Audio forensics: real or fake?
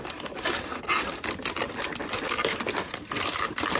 real